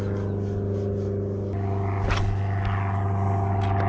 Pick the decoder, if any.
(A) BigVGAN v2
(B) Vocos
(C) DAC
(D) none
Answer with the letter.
D